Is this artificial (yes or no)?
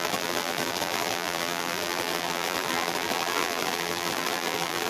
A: yes